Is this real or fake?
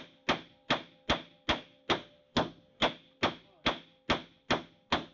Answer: real